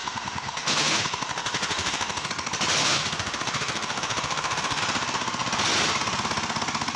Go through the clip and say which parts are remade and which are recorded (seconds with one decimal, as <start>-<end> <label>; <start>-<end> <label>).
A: 0.0-2.3 remade; 2.3-2.8 recorded; 2.8-4.8 remade; 4.8-7.0 recorded